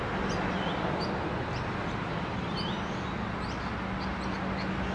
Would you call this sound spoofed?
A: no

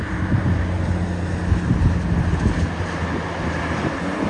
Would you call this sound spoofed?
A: no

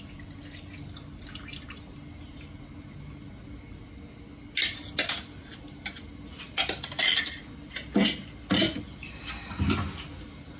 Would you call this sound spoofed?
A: no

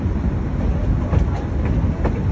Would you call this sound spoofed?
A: no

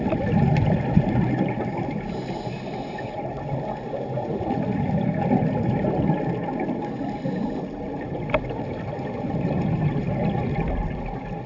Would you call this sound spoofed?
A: no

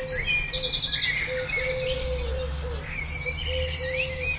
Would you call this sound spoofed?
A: no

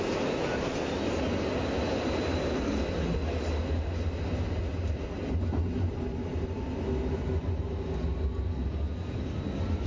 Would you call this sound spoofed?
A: no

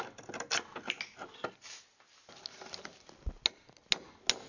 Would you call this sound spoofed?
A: no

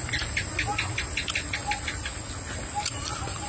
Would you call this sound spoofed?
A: no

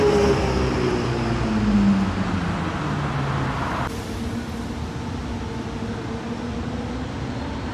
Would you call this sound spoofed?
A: no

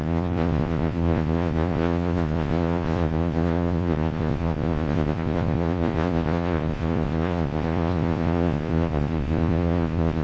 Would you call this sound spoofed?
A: yes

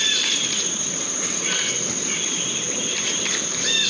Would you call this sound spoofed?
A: no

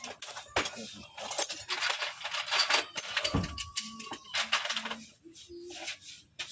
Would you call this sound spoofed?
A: no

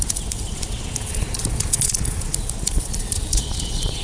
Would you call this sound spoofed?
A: yes